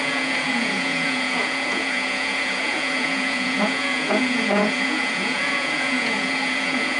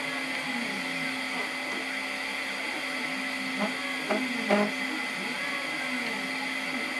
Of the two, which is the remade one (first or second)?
first